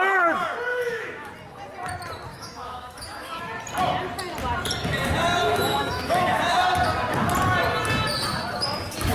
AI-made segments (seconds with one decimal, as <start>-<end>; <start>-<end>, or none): 0.7-1.3; 2.3-3.4; 5.4-6.6